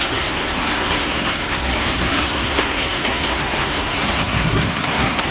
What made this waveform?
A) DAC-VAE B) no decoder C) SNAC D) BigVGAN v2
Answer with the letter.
C